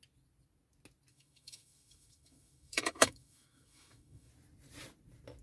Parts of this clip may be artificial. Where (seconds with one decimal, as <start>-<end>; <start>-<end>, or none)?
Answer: 1.1-4.3